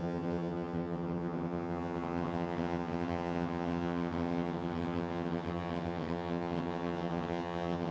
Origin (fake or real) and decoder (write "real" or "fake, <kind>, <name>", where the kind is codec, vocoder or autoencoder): fake, vocoder, HiFi-GAN